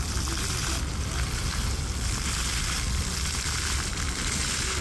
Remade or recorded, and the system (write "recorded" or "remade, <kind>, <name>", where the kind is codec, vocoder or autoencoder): recorded